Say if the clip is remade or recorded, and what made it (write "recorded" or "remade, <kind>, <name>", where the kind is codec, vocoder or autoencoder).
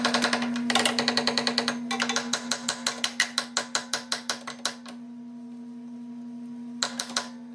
recorded